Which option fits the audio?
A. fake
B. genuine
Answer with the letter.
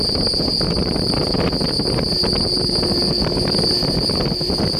B